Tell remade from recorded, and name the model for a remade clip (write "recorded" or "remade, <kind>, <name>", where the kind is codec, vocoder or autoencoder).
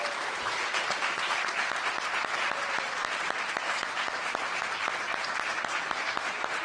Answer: remade, vocoder, BigVGAN v2